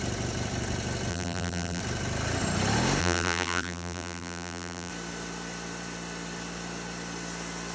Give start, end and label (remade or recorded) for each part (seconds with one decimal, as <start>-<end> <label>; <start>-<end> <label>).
0.0-1.1 recorded; 1.1-1.8 remade; 1.8-3.0 recorded; 3.0-4.9 remade; 4.9-7.7 recorded